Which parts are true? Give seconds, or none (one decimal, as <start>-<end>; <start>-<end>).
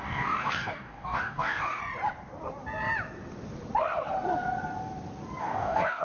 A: 1.8-5.4